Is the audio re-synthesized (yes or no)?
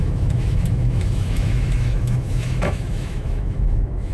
yes